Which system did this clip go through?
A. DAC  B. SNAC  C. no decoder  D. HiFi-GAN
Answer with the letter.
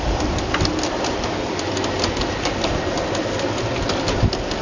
C